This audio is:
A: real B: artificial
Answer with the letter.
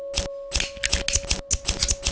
A